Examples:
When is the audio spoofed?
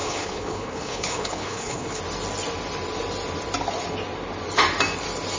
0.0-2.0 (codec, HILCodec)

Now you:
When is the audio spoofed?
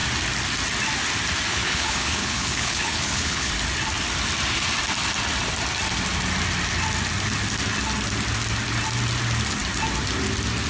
1.5-3.5 (codec, HILCodec)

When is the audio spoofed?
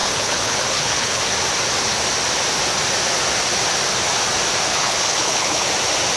0.0-1.2 (codec, HILCodec); 4.7-5.7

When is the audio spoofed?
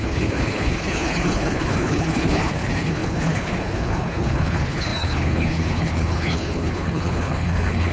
0.0-7.9 (codec, HILCodec)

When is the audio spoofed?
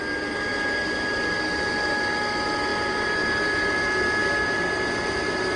none